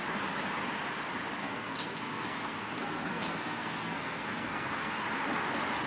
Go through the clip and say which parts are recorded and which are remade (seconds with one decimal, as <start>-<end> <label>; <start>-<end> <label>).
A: 0.0-1.4 recorded; 1.4-4.9 remade; 4.9-5.9 recorded